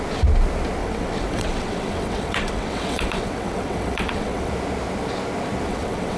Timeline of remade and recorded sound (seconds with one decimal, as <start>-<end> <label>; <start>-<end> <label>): 0.0-0.8 recorded; 0.8-4.5 remade; 4.5-5.7 recorded; 5.7-6.2 remade